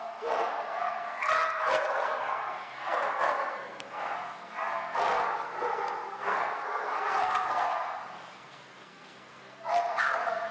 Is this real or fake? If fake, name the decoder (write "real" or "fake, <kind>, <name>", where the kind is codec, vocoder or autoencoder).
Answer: fake, codec, SNAC